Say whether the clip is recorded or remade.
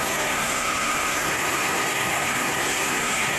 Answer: remade